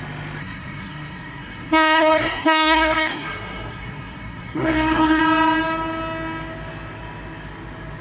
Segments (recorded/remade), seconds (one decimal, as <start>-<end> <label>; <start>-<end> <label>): 0.0-0.4 recorded; 0.4-5.2 remade; 5.2-8.0 recorded